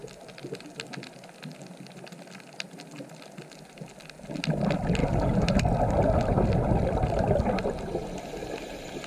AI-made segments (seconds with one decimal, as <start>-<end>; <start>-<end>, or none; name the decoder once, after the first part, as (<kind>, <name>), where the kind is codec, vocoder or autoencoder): 5.0-5.6 (vocoder, BigVGAN v2)